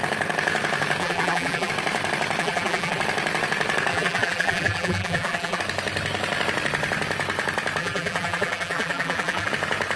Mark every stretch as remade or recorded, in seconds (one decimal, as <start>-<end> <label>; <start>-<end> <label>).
0.0-1.0 recorded; 1.0-1.7 remade; 1.7-2.4 recorded; 2.4-3.0 remade; 3.0-3.9 recorded; 3.9-5.6 remade; 5.6-7.8 recorded; 7.8-9.5 remade; 9.5-10.0 recorded